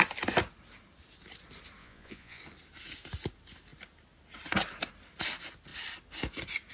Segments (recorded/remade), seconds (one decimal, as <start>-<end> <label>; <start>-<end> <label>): 0.0-1.8 recorded; 1.8-2.4 remade; 2.4-6.7 recorded